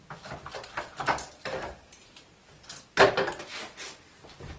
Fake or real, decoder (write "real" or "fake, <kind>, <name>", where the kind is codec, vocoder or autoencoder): real